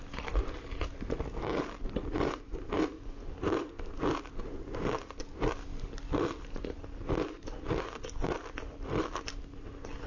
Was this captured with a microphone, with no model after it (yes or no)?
yes